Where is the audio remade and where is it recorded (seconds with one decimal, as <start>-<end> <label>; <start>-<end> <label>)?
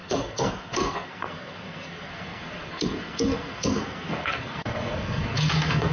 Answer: 0.0-5.9 remade